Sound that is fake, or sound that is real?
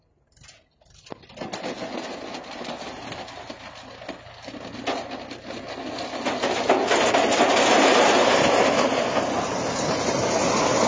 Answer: real